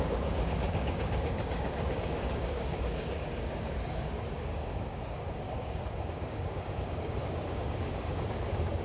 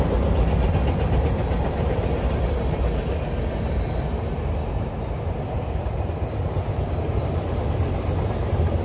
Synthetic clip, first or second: first